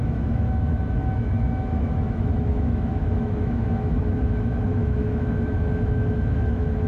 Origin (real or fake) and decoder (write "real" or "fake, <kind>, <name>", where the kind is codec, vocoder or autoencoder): fake, autoencoder, DAC-VAE